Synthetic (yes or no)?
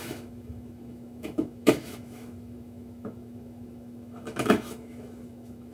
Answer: yes